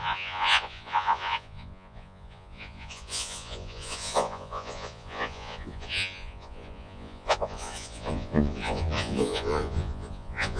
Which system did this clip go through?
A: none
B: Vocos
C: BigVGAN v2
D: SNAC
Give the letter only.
B